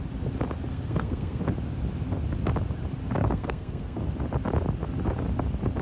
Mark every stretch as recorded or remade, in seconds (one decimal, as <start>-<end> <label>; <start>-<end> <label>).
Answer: 0.0-0.7 recorded; 0.7-1.4 remade; 1.4-3.2 recorded; 3.2-4.0 remade; 4.0-5.8 recorded